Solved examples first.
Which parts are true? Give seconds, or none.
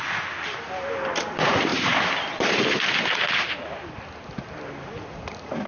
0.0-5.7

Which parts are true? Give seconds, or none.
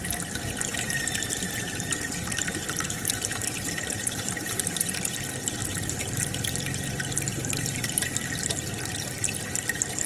0.0-0.7; 4.8-5.6; 6.2-7.3; 8.1-10.1